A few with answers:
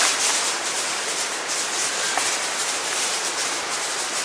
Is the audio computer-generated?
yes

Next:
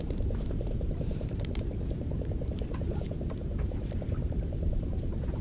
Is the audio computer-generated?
yes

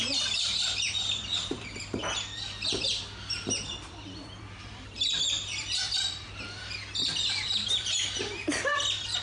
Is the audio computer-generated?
yes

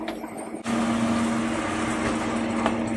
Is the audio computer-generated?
no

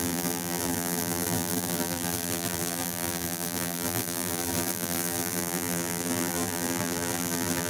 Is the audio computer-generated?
yes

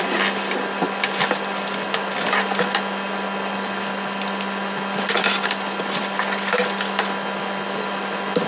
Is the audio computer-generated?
no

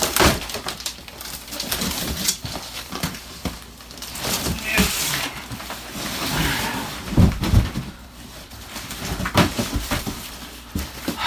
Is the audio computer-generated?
yes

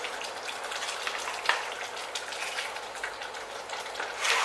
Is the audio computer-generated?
yes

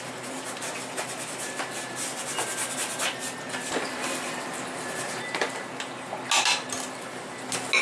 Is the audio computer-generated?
no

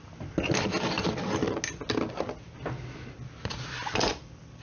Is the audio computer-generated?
no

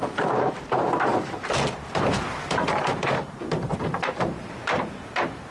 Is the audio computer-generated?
yes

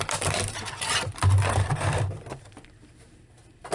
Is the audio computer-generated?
yes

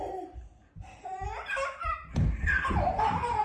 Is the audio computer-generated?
yes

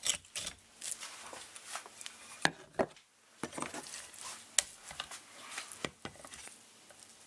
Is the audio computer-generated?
no